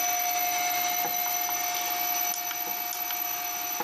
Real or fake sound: real